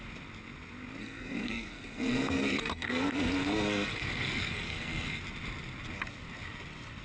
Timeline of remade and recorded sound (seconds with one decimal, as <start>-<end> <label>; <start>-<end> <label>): 0.0-1.0 recorded; 1.0-5.2 remade; 5.2-7.0 recorded

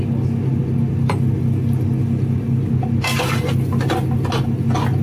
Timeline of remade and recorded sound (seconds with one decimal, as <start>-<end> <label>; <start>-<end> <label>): 0.0-5.0 recorded

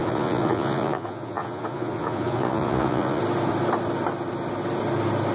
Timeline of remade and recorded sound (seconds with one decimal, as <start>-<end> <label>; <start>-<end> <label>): 0.0-3.2 remade; 3.2-5.3 recorded

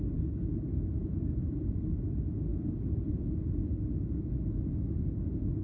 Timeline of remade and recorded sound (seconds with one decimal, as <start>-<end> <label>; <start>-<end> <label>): 0.0-5.6 recorded

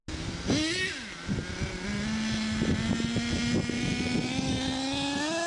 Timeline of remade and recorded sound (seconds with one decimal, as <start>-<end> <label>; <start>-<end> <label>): 0.0-5.5 recorded

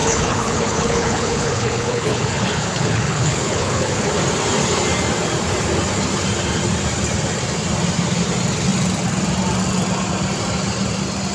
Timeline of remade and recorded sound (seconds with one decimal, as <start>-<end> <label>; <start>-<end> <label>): 0.0-4.0 remade; 4.0-11.3 recorded

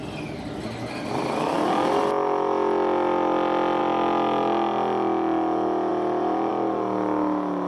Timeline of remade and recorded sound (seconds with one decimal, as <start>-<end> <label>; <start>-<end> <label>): 0.0-5.9 recorded; 5.9-6.5 remade; 6.5-7.7 recorded

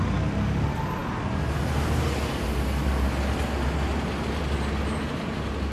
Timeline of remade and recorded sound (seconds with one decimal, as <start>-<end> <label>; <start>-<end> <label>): 0.0-5.7 recorded